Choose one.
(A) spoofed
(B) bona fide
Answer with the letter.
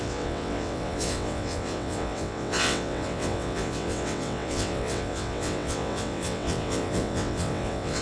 A